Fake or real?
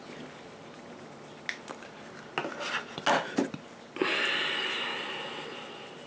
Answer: real